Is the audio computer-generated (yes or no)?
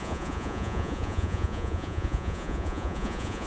yes